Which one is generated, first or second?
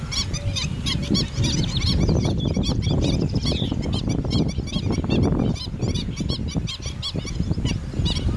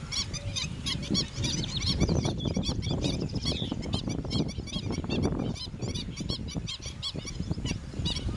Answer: second